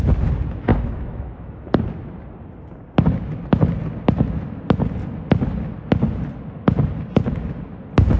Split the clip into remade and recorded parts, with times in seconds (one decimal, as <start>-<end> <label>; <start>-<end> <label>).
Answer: 0.0-0.7 recorded; 0.7-1.7 remade; 1.7-8.2 recorded